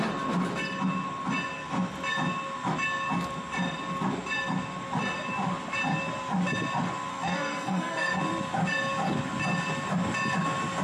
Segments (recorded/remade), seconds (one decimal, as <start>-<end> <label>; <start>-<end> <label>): 0.0-7.1 recorded; 7.1-8.2 remade; 8.2-10.8 recorded